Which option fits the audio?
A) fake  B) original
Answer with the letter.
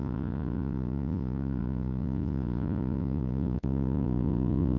A